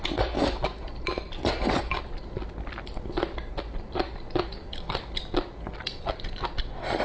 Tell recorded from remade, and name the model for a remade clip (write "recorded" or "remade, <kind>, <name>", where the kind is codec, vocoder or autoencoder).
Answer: recorded